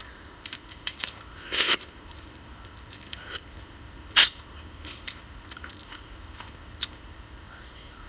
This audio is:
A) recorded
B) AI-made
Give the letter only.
B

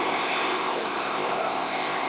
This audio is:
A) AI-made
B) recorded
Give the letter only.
A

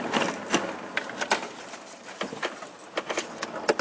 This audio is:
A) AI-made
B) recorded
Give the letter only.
B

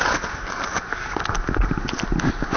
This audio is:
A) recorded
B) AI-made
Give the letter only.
A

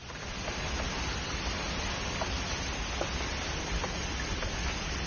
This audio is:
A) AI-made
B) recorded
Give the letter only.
B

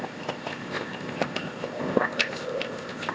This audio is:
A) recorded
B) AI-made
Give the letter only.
B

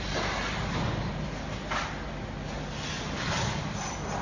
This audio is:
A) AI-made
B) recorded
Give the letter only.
B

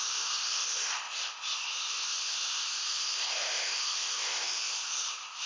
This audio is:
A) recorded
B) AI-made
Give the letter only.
B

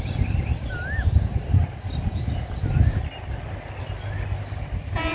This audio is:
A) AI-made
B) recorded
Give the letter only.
B